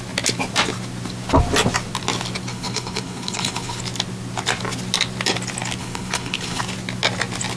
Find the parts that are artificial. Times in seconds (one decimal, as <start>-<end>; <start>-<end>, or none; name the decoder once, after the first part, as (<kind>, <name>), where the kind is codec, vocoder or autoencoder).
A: 2.5-3.8 (codec, HILCodec); 5.8-6.6